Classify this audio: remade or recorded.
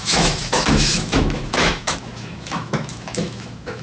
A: remade